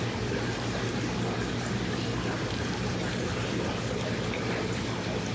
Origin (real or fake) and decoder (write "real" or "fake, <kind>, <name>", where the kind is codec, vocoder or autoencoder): real